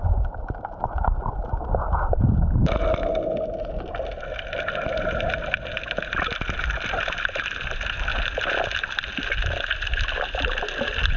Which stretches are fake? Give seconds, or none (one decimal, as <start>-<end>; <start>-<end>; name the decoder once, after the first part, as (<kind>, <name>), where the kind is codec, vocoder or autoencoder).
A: none